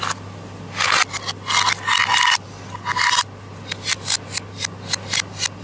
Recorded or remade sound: recorded